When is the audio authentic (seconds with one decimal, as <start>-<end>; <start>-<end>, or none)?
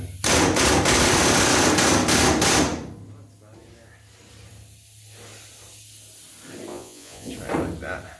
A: 0.0-6.7; 7.3-8.2